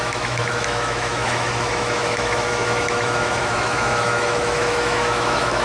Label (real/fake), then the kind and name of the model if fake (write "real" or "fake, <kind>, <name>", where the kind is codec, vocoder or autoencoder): fake, autoencoder, DAC-VAE